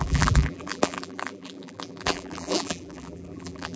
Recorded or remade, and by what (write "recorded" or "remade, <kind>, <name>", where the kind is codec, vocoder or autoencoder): remade, vocoder, BigVGAN v2